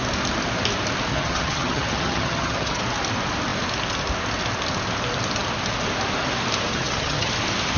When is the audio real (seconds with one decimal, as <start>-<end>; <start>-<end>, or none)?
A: 0.0-1.1; 2.8-6.7; 7.3-7.8